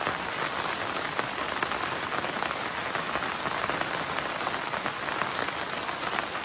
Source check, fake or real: fake